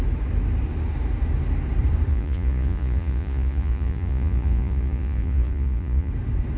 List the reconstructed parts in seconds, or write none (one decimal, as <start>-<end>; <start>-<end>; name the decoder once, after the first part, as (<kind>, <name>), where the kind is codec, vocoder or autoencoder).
2.1-6.1 (vocoder, Vocos)